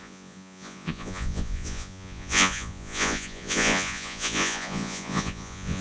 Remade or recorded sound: remade